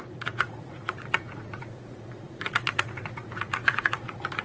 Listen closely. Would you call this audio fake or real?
fake